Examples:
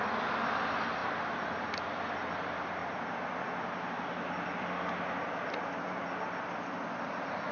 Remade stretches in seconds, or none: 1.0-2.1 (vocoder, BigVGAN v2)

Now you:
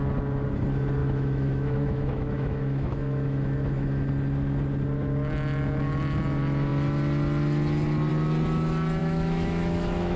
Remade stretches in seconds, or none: 1.0-4.1 (autoencoder, DAC-VAE); 9.0-10.2